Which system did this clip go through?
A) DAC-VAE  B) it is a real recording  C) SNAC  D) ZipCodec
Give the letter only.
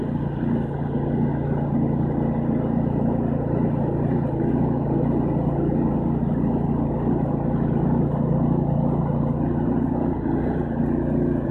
B